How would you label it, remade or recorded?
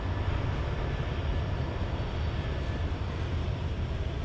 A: recorded